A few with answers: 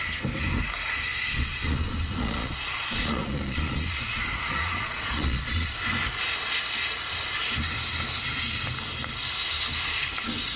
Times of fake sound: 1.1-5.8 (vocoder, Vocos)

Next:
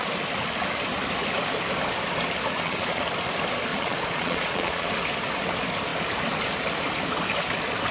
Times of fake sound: 2.5-3.0 (vocoder, Vocos); 3.7-4.9